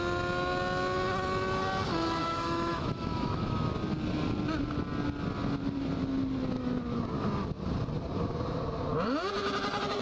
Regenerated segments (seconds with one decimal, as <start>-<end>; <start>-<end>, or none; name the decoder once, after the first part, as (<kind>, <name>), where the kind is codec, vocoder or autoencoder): 2.2-3.7 (autoencoder, DAC-VAE)